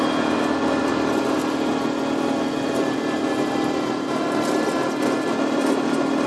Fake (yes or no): no